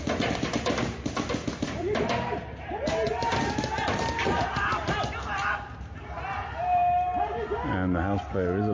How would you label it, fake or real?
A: real